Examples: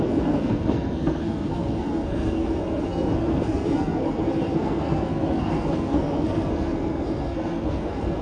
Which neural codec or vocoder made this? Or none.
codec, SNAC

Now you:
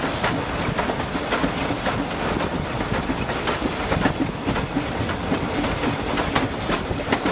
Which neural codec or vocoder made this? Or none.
none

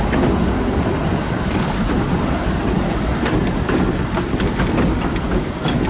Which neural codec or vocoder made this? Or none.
none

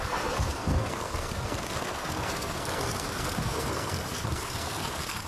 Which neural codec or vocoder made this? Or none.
codec, SNAC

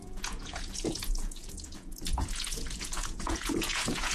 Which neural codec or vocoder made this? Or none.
vocoder, Vocos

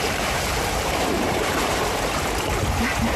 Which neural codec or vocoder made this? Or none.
vocoder, BigVGAN v2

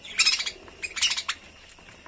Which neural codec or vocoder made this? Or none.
none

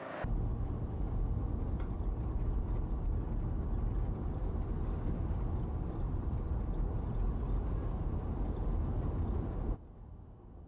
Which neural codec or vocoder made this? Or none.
none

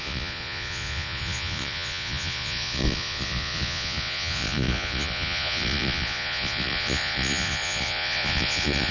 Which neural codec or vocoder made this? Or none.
vocoder, Vocos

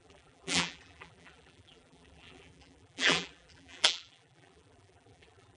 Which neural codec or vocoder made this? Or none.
vocoder, BigVGAN v2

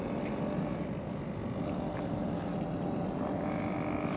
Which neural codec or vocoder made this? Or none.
none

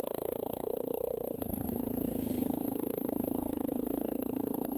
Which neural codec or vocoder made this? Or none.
codec, SNAC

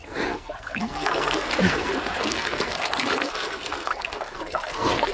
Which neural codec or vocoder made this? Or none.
codec, SNAC